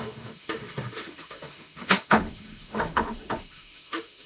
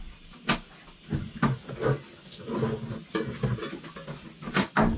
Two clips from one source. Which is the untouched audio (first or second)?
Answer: second